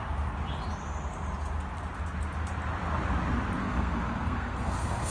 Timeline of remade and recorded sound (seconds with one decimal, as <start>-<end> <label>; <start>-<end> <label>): 0.0-3.6 recorded; 3.6-5.1 remade